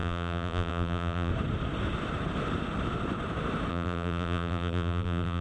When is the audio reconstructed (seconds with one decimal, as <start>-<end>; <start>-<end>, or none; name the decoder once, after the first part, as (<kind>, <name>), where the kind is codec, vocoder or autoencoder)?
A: 0.0-1.3 (vocoder, BigVGAN v2); 3.7-5.4